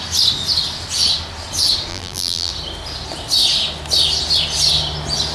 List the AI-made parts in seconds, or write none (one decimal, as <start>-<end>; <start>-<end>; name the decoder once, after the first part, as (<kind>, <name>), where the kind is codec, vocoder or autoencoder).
1.9-2.5 (vocoder, BigVGAN v2)